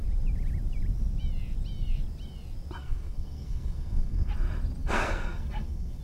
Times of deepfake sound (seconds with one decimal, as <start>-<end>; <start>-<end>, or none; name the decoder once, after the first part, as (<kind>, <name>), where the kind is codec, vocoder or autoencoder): 2.8-4.3 (codec, SNAC); 4.8-6.0